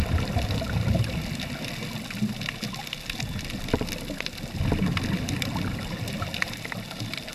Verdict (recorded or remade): recorded